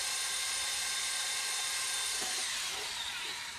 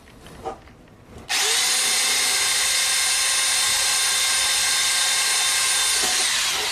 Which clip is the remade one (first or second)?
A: first